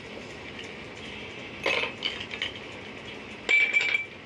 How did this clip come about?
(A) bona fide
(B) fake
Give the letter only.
A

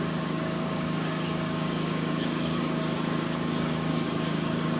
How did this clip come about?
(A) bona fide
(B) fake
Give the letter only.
B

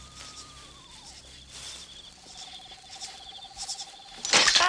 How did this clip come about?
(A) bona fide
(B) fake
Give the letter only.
A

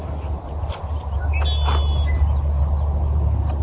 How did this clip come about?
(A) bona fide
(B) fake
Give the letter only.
A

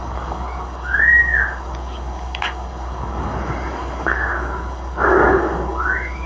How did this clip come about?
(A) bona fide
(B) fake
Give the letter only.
B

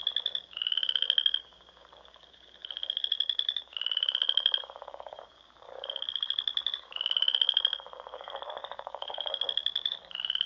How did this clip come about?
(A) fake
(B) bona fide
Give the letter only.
A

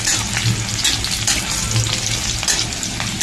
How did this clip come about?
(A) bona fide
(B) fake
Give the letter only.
A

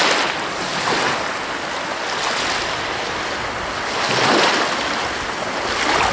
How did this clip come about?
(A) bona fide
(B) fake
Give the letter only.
A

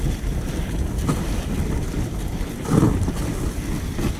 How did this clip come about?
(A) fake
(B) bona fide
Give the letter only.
B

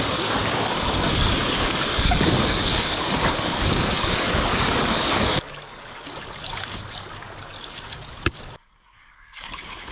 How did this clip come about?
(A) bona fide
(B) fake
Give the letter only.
B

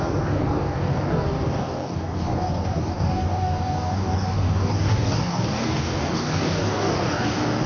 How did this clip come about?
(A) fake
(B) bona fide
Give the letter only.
A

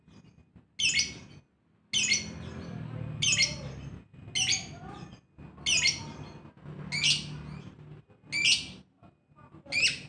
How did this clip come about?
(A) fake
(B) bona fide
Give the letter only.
B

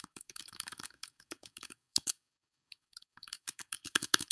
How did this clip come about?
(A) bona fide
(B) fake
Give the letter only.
B